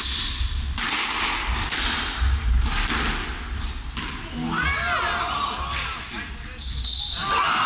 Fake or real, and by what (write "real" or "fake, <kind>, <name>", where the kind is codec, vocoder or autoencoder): real